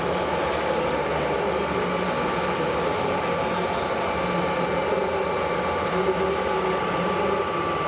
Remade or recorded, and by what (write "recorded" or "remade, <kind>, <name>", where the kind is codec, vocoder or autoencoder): recorded